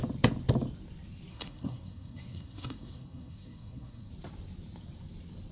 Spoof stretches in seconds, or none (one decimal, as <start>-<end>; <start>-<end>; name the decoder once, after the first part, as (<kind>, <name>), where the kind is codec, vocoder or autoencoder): 1.3-4.1 (codec, SNAC)